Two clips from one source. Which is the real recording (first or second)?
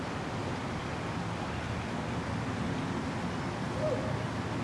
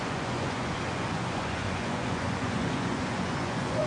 first